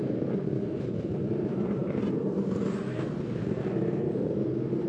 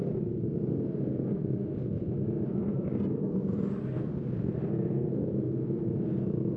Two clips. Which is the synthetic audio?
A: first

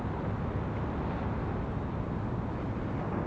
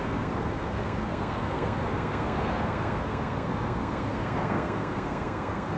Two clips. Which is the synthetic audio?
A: second